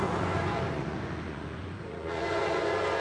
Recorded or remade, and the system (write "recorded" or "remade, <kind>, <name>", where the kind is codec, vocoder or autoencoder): remade, vocoder, Vocos